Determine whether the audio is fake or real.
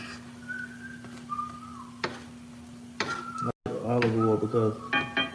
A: real